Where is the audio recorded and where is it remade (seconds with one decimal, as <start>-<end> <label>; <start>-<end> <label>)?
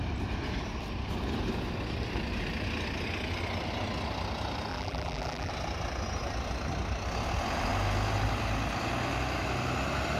0.0-4.7 recorded; 4.7-5.5 remade; 5.5-10.2 recorded